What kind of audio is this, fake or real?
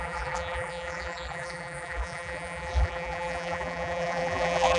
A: fake